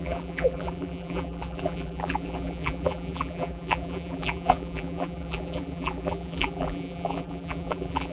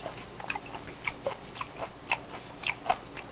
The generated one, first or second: first